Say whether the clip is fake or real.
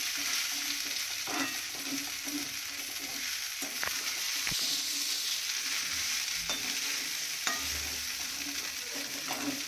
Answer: real